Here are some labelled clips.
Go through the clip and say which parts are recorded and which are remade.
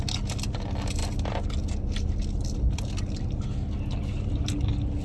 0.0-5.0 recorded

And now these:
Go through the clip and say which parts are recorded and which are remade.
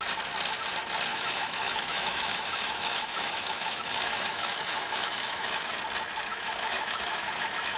0.0-1.1 recorded; 1.1-5.7 remade; 5.7-6.2 recorded; 6.2-7.8 remade